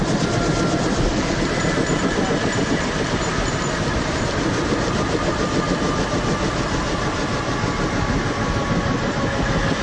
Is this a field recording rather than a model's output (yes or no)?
yes